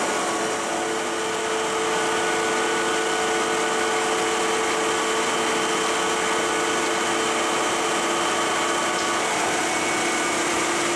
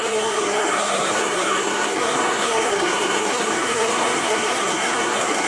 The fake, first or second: second